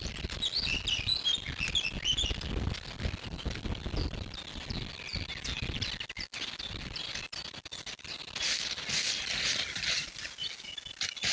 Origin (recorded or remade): recorded